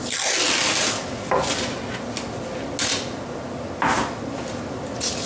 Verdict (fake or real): real